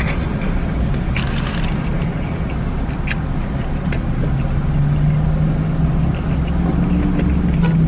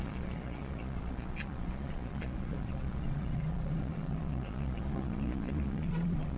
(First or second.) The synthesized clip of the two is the second